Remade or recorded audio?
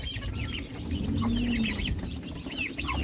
recorded